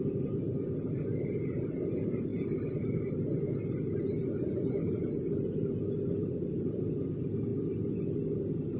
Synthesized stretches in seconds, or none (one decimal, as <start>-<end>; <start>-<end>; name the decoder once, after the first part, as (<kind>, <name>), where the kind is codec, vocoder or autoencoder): none